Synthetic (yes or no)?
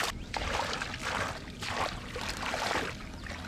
no